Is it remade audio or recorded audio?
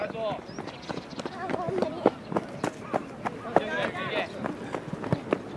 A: recorded